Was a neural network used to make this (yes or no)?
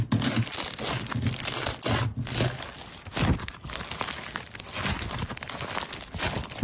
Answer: no